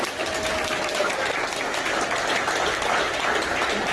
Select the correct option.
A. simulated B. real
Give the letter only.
B